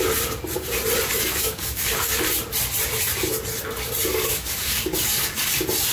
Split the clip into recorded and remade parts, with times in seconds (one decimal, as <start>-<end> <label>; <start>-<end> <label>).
0.0-1.1 recorded; 1.1-2.2 remade; 2.2-4.1 recorded; 4.1-5.5 remade; 5.5-5.9 recorded